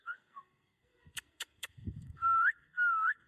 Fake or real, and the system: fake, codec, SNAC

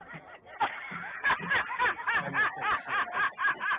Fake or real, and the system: real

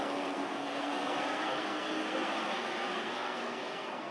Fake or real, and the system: fake, codec, SNAC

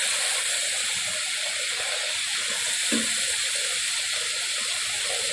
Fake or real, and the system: real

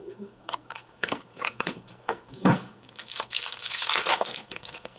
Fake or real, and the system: fake, codec, SNAC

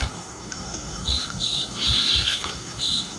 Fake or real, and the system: fake, codec, SNAC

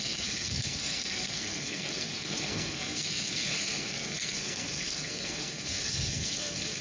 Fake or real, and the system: fake, codec, SNAC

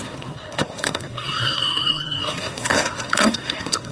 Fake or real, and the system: fake, codec, SNAC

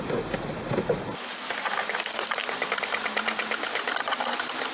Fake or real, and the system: real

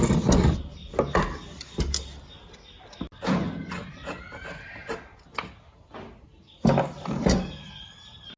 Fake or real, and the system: real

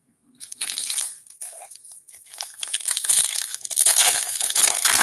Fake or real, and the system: fake, codec, SNAC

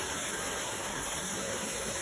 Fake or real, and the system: fake, codec, SNAC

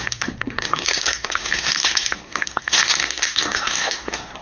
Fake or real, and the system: fake, codec, SNAC